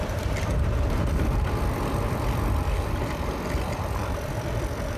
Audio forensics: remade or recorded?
remade